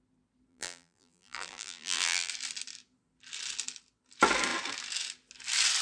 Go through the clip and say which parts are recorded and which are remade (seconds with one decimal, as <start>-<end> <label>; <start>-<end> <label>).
0.0-0.5 recorded; 0.5-2.3 remade; 2.3-5.8 recorded